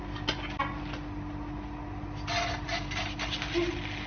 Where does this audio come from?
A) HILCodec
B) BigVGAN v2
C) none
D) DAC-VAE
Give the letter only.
C